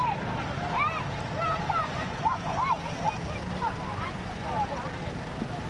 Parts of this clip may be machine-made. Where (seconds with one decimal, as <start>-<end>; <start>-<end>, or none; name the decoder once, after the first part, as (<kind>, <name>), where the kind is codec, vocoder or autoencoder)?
1.8-2.6 (vocoder, Vocos); 3.9-4.5